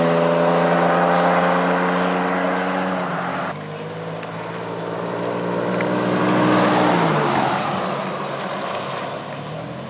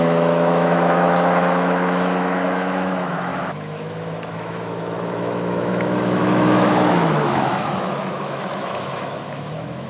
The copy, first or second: second